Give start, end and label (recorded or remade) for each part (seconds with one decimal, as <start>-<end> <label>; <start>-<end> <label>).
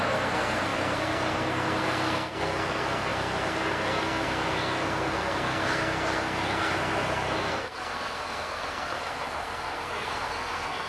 0.0-10.9 remade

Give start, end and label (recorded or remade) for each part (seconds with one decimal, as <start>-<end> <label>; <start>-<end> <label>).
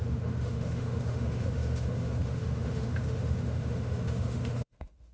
0.0-5.1 remade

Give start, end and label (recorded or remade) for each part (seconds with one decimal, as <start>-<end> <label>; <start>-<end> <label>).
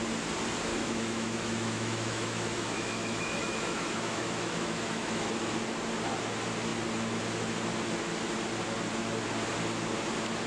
0.0-0.7 recorded; 0.7-5.3 remade; 5.3-10.5 recorded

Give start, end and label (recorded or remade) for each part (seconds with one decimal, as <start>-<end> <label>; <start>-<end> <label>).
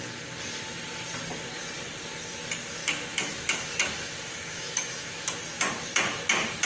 0.0-2.8 recorded; 2.8-5.4 remade; 5.4-6.7 recorded